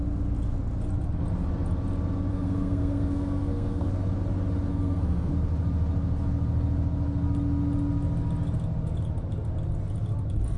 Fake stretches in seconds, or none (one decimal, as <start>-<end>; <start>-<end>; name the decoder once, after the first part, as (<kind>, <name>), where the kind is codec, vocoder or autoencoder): 2.3-3.9 (codec, SNAC); 4.7-5.3